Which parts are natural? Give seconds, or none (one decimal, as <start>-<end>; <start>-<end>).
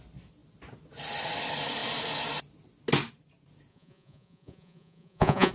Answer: 0.0-3.7